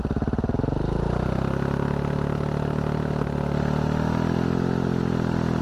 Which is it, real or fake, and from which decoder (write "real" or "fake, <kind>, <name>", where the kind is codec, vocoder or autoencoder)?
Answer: real